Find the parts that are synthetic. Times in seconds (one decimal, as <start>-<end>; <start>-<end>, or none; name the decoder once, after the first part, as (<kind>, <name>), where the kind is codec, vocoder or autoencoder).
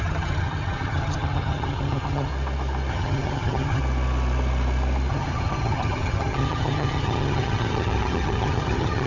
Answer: 0.0-2.3 (vocoder, HiFi-GAN); 2.9-3.8; 5.1-9.1